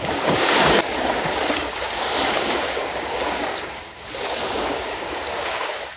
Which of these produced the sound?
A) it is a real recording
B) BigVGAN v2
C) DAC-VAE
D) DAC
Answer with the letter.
D